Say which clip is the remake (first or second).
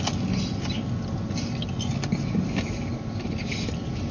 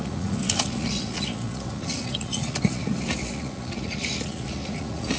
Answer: second